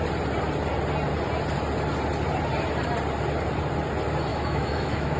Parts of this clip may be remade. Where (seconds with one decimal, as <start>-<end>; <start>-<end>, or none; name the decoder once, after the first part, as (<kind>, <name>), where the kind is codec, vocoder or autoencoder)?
4.3-5.2 (autoencoder, DAC-VAE)